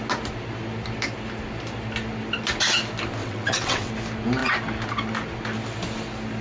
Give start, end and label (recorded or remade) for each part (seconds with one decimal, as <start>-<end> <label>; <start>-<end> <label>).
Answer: 0.0-3.2 recorded; 3.2-3.9 remade; 3.9-6.4 recorded